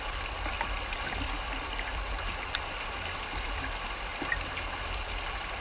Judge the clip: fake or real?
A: real